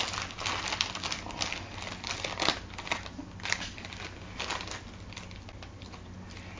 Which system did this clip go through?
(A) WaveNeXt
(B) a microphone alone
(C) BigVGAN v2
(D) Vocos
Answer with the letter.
B